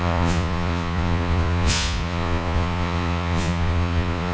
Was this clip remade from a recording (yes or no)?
yes